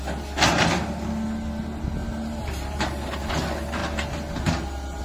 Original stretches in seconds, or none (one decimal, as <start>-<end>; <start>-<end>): 0.0-2.0; 3.3-5.0